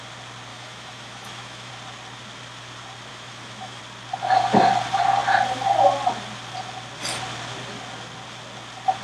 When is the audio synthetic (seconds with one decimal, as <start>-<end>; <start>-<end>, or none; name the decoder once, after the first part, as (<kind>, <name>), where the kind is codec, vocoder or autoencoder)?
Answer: 0.5-1.7 (autoencoder, DAC-VAE); 3.1-3.8